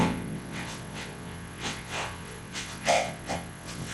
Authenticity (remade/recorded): remade